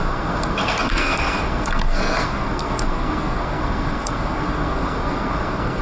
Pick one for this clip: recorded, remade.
remade